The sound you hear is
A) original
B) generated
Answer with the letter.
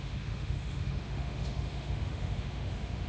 B